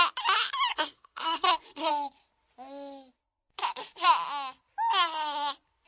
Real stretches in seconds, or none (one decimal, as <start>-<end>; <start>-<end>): 0.0-0.7; 1.9-5.9